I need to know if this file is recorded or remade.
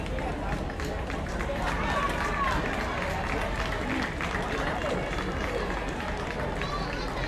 recorded